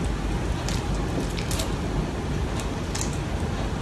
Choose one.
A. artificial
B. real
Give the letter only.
B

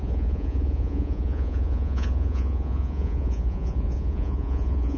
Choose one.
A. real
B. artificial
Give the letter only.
B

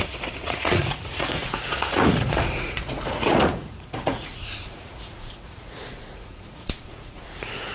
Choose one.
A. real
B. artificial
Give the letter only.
B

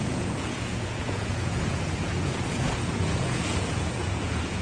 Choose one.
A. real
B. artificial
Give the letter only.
B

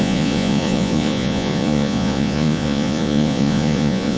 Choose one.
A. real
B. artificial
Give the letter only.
B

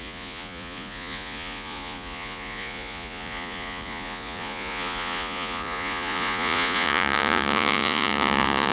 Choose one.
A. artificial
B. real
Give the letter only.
A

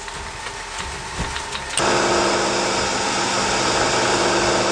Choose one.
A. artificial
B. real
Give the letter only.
B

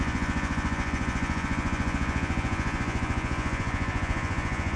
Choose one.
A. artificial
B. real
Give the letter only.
A